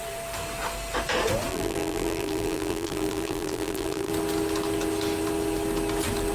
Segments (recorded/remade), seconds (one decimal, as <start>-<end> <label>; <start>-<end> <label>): 0.0-1.5 recorded; 1.5-4.1 remade; 4.1-6.3 recorded